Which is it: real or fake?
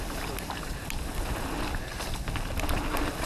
real